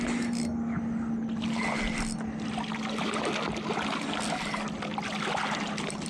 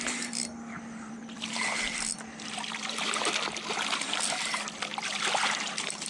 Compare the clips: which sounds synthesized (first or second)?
second